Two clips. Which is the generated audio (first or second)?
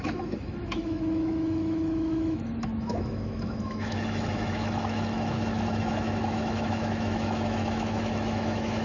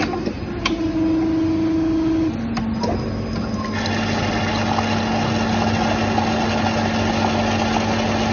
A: first